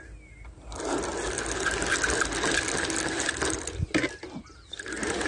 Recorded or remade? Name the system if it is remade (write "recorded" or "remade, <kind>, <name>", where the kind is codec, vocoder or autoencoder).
recorded